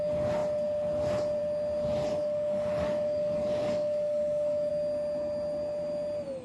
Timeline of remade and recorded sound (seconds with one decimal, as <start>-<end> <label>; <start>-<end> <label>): 0.0-2.1 recorded; 2.1-4.7 remade; 4.7-6.4 recorded